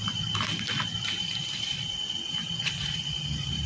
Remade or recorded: recorded